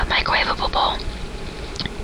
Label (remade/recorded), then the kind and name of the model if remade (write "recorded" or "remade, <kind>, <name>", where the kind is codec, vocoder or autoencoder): remade, vocoder, BigVGAN v2